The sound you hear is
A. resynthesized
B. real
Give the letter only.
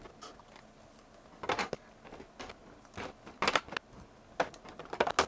B